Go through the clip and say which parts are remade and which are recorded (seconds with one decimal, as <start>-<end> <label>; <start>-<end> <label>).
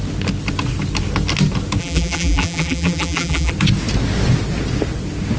0.0-1.8 recorded; 1.8-3.5 remade; 3.5-5.4 recorded